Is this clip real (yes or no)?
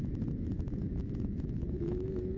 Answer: no